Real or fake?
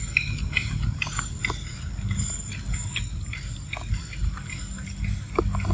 real